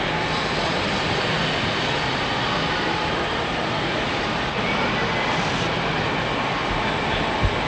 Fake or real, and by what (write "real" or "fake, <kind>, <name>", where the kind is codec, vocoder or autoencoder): real